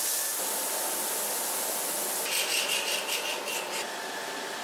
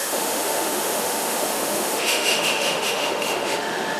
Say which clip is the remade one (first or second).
second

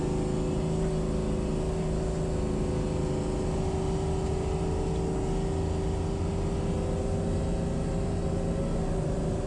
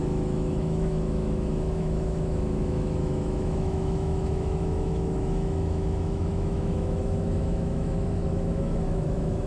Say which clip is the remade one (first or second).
second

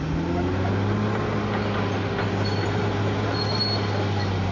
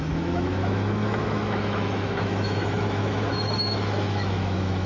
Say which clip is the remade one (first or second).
second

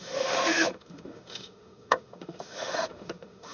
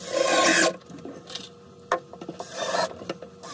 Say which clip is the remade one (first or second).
first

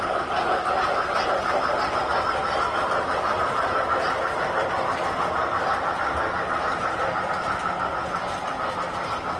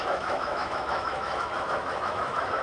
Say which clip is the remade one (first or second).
second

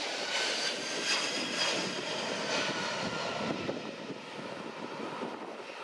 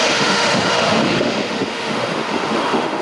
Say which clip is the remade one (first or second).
second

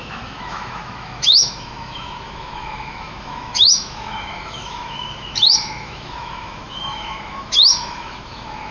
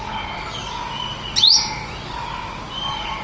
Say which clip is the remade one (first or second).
first